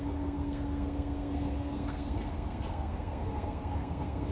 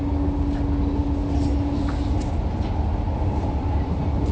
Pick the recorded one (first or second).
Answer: second